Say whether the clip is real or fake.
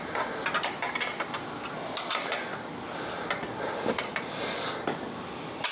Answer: real